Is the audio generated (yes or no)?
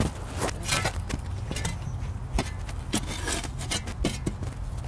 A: no